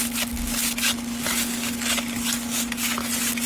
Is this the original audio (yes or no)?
yes